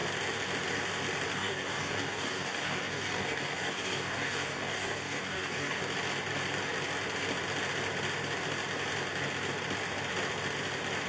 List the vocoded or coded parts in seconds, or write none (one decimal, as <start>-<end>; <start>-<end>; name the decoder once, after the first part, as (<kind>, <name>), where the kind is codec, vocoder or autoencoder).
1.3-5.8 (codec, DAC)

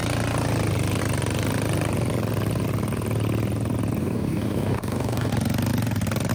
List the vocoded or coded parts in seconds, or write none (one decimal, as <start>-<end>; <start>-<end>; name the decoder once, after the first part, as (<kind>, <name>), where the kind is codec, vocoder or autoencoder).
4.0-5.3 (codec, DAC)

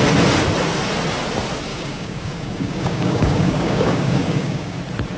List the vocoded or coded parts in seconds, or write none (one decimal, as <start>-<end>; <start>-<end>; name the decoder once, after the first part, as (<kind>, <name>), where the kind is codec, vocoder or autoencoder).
1.7-4.8 (codec, DAC)